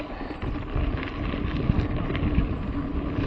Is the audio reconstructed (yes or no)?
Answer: no